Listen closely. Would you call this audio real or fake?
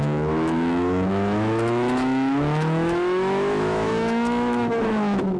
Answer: fake